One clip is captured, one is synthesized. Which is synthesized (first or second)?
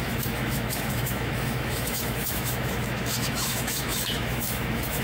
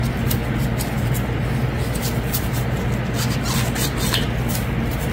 first